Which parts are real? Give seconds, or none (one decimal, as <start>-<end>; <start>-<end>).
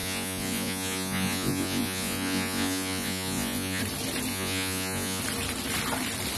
3.8-4.3; 5.2-6.4